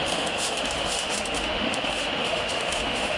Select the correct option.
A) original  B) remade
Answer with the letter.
B